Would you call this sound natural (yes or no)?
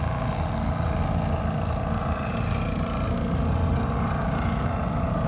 yes